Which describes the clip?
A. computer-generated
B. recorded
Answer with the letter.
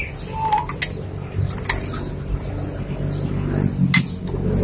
B